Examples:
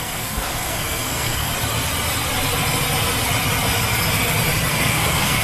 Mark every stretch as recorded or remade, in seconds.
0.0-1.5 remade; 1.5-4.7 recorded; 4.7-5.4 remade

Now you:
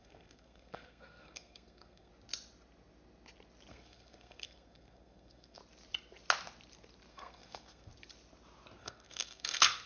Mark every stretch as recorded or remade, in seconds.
0.0-2.1 remade; 2.1-3.7 recorded; 3.7-5.6 remade; 5.6-7.1 recorded; 7.1-7.9 remade; 7.9-8.8 recorded; 8.8-9.9 remade